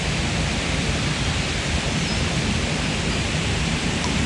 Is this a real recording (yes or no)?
yes